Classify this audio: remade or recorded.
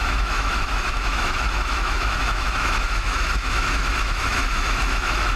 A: remade